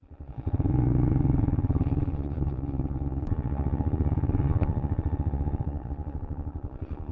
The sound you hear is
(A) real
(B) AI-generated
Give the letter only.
B